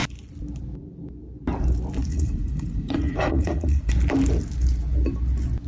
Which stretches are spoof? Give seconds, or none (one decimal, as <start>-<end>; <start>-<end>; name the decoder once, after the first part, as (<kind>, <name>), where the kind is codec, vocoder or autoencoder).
2.1-3.9 (vocoder, Vocos)